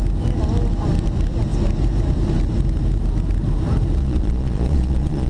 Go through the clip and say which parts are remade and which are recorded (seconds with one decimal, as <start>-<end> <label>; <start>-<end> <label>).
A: 0.0-4.0 recorded; 4.0-5.3 remade